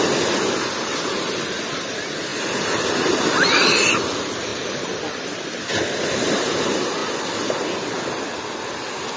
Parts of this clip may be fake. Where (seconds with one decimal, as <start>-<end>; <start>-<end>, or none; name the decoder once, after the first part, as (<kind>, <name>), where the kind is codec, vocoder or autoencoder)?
2.3-3.9 (vocoder, BigVGAN v2); 4.5-5.6